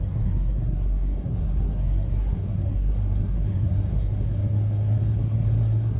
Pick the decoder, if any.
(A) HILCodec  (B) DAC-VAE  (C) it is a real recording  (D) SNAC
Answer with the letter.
D